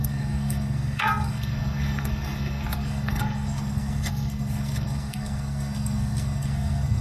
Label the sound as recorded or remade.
remade